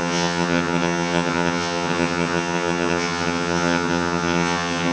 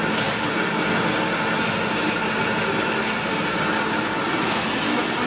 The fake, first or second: first